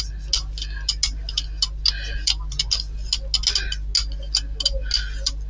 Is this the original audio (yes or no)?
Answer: yes